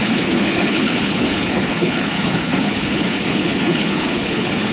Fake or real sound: fake